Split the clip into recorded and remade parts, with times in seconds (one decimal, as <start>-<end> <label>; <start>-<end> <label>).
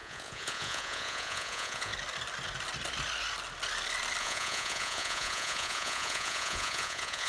0.0-1.9 remade; 1.9-4.2 recorded; 4.2-7.3 remade